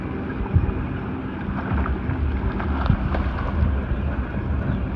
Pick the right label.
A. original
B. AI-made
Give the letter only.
A